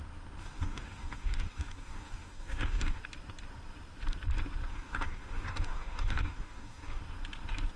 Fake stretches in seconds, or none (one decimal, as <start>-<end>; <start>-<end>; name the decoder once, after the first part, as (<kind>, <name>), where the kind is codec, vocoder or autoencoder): 0.4-3.0 (codec, DAC); 4.7-7.0